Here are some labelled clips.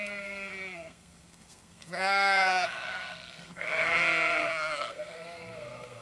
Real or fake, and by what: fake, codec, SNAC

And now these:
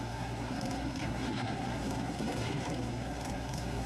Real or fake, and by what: fake, codec, SNAC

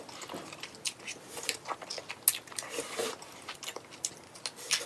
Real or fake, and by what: real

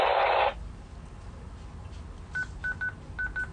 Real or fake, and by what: real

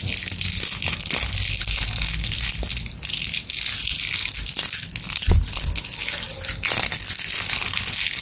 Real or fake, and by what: real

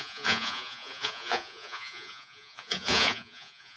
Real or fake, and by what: fake, vocoder, Vocos